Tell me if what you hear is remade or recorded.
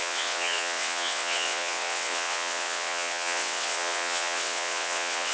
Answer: remade